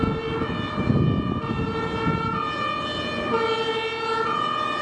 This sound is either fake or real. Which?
real